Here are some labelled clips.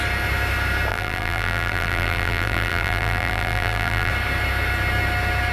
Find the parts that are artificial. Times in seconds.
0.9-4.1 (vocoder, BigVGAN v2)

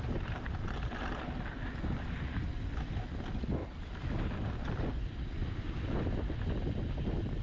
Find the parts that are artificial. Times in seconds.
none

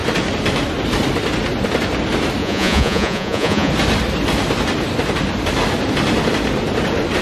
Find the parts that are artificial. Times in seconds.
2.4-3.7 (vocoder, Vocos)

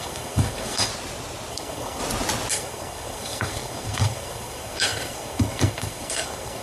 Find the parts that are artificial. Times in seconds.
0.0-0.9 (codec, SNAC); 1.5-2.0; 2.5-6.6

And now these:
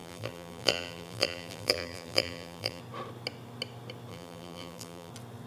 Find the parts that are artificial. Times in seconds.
0.0-2.8 (vocoder, BigVGAN v2); 4.1-5.1

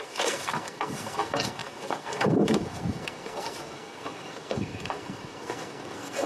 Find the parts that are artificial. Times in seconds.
0.0-6.3 (codec, SNAC)

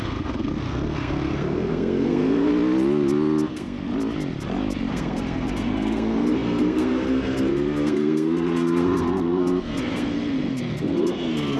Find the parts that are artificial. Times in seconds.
0.0-2.5 (codec, SNAC); 3.5-3.9; 4.9-11.6

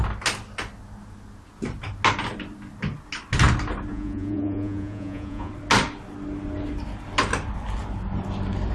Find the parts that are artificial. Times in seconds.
3.9-5.5 (vocoder, Vocos)